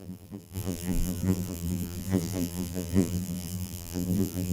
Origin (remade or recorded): remade